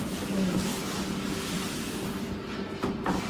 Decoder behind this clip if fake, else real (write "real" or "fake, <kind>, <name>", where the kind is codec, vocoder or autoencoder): real